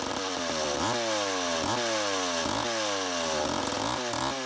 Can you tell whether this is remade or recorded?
recorded